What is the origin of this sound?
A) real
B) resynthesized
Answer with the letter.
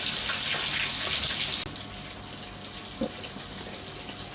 A